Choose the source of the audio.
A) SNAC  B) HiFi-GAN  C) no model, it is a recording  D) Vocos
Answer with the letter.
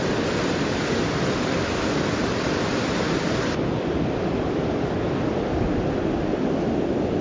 C